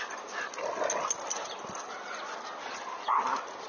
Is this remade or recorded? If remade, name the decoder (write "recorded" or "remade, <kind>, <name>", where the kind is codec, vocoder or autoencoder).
recorded